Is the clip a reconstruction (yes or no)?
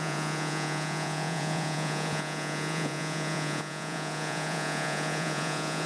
yes